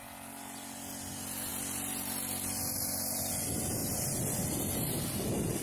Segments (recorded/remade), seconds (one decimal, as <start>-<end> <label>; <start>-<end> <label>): 0.0-5.6 recorded